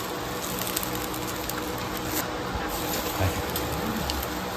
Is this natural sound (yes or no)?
yes